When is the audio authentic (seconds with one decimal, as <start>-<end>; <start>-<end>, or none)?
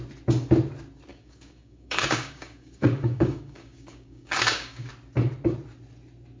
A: 0.0-1.1; 4.9-6.4